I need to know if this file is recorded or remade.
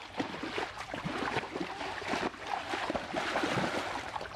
recorded